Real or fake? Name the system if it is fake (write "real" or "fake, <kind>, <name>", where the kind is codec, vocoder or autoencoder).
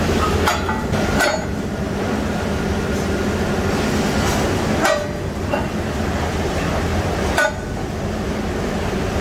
real